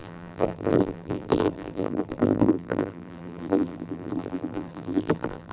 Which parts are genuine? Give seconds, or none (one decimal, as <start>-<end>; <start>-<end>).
none